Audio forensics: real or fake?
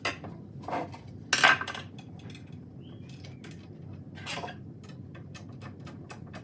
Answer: real